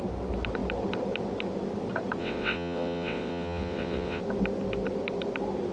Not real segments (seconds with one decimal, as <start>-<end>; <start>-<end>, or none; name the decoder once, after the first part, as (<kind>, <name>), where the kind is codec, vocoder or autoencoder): 2.2-4.2 (vocoder, WaveNeXt)